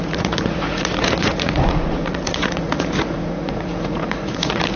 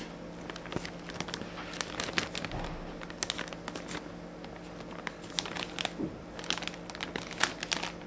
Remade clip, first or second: first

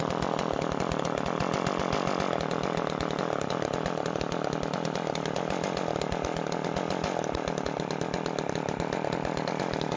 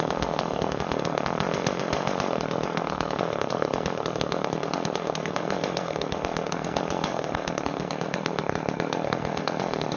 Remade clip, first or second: second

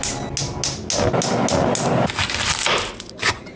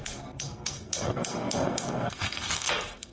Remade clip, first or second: second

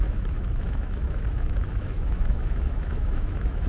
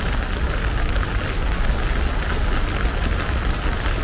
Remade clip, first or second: first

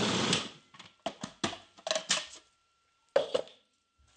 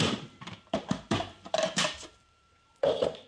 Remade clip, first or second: second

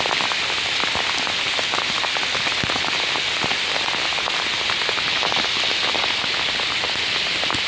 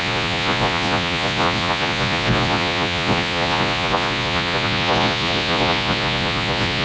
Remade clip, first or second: second